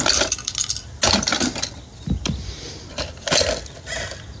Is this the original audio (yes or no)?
yes